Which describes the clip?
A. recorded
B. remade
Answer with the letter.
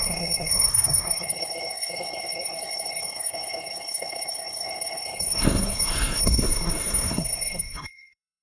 B